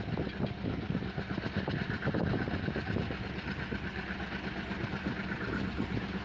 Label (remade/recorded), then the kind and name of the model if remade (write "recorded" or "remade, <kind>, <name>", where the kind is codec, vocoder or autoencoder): recorded